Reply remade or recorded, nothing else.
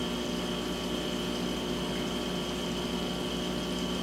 recorded